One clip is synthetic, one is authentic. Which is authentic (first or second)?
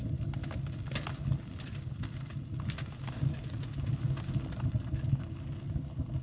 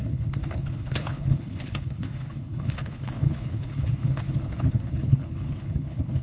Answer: first